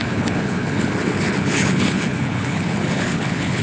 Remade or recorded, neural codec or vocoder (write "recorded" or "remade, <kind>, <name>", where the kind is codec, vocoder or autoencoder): remade, codec, HILCodec